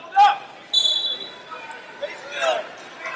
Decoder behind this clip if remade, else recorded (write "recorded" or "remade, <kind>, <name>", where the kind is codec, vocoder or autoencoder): recorded